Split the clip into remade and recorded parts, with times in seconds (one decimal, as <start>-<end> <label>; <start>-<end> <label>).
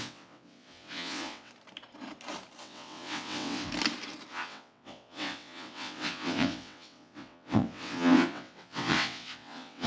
0.0-1.5 remade; 1.5-2.6 recorded; 2.6-3.7 remade; 3.7-4.3 recorded; 4.3-9.9 remade